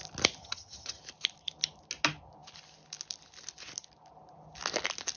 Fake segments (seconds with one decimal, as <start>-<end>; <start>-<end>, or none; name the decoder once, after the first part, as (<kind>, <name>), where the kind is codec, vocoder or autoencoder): 0.4-1.0 (vocoder, HiFi-GAN)